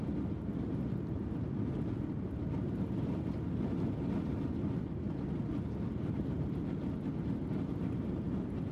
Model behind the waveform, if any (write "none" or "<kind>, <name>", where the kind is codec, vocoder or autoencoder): none